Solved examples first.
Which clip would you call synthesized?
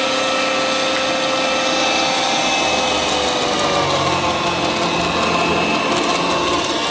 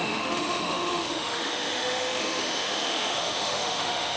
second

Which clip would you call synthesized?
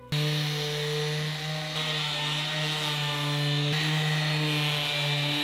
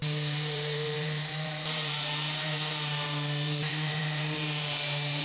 second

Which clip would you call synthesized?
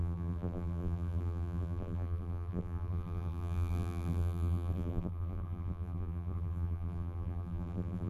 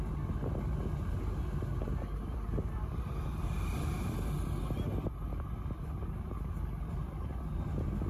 first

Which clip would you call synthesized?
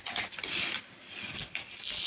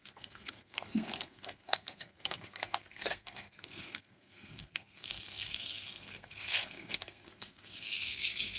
second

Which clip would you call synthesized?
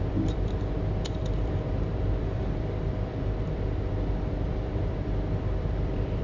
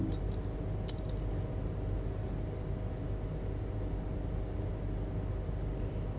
first